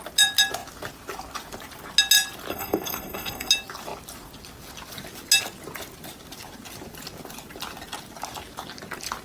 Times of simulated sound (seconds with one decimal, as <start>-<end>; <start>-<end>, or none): 2.5-3.5